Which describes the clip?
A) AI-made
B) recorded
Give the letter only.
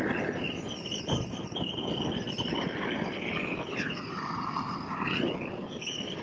B